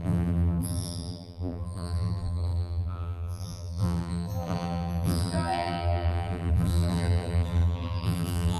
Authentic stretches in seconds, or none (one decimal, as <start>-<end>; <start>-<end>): none